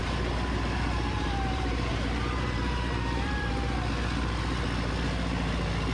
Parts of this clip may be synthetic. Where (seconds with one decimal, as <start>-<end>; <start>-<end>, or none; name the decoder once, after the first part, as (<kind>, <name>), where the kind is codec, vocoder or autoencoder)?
0.0-3.5 (vocoder, BigVGAN v2)

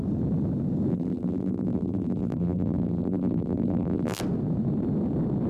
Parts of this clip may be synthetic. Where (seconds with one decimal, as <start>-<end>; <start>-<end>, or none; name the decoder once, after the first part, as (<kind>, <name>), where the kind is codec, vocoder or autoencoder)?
0.9-4.2 (vocoder, BigVGAN v2)